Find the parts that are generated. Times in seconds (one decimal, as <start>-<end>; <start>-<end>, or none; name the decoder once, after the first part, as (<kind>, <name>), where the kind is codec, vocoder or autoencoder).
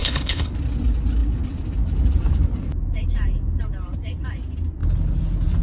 0.0-0.5 (codec, HILCodec)